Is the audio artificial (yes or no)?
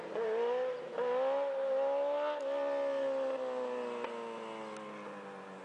no